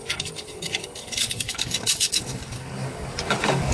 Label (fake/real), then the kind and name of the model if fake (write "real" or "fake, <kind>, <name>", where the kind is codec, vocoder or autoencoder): fake, codec, DAC